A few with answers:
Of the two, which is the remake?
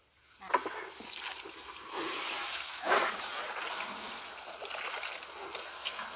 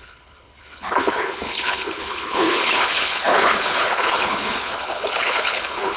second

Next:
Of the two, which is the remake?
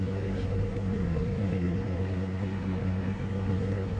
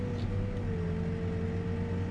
first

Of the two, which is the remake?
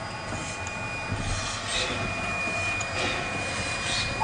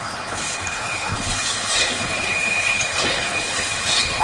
second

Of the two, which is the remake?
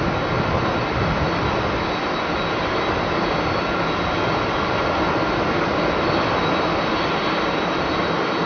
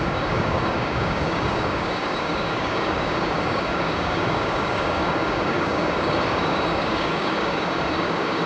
second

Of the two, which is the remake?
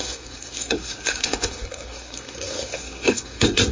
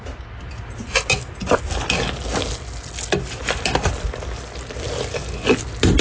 first